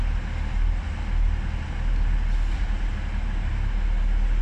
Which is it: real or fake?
real